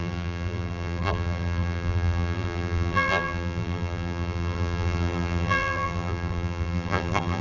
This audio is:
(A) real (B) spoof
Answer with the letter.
B